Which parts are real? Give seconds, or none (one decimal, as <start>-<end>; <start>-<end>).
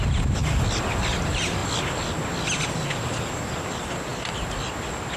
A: 0.0-5.2